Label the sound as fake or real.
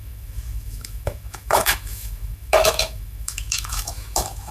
fake